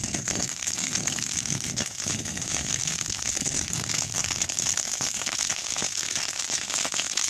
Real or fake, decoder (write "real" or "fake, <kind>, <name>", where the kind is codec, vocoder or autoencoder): fake, codec, SNAC